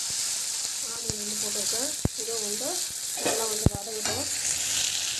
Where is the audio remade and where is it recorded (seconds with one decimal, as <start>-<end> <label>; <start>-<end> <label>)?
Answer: 0.0-5.2 recorded

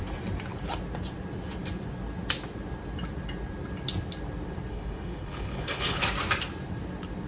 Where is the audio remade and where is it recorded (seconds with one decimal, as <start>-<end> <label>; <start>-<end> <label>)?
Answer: 0.0-4.7 recorded; 4.7-6.0 remade; 6.0-7.3 recorded

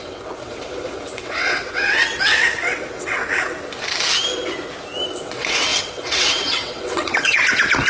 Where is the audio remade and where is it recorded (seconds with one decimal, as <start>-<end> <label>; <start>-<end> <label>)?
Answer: 0.0-3.2 remade; 3.2-5.2 recorded; 5.2-7.4 remade; 7.4-7.9 recorded

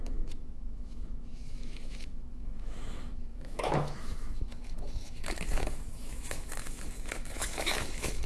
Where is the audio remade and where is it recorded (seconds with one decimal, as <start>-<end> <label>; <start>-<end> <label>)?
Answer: 0.0-8.3 remade

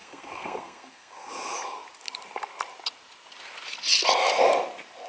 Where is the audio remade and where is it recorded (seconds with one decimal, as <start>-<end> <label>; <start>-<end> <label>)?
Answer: 0.0-1.3 remade; 1.3-5.1 recorded

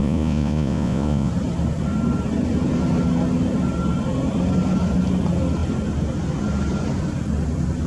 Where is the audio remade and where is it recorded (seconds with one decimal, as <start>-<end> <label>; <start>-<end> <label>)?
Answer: 0.0-1.3 remade; 1.3-7.9 recorded